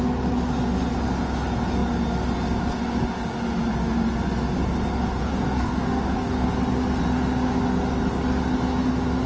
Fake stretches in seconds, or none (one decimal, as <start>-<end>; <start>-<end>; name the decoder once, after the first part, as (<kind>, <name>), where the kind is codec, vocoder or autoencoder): 5.2-6.5 (codec, DAC)